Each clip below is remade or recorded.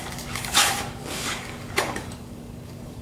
remade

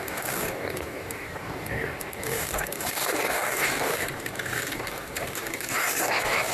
remade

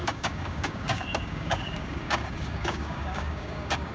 remade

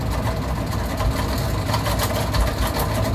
recorded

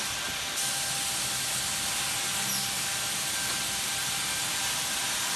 recorded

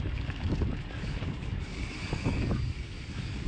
remade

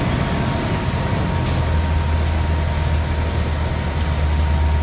recorded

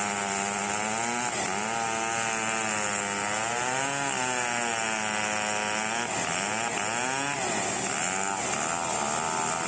recorded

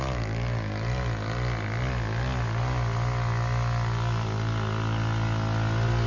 recorded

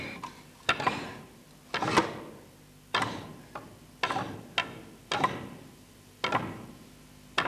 recorded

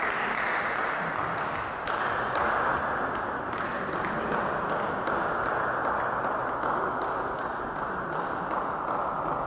recorded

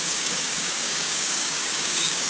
remade